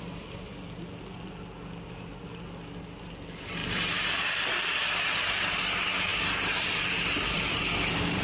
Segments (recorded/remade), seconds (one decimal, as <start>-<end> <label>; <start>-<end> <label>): 0.0-0.5 remade; 0.5-3.0 recorded; 3.0-3.6 remade; 3.6-5.4 recorded; 5.4-8.2 remade